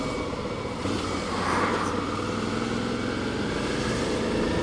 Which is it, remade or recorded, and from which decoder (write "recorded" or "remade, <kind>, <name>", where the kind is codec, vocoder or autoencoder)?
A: recorded